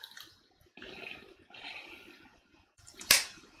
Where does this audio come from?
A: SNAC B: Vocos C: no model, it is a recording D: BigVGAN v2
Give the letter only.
D